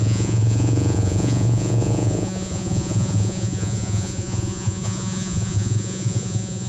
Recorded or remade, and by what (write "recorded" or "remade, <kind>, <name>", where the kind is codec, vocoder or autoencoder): remade, vocoder, Vocos